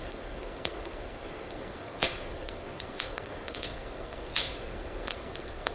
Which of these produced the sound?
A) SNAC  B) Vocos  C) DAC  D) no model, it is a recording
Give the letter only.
A